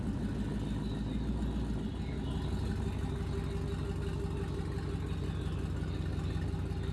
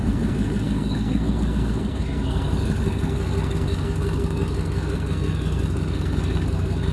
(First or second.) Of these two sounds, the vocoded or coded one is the second